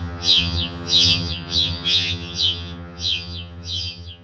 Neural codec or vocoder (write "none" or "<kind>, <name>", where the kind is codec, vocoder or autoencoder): vocoder, HiFi-GAN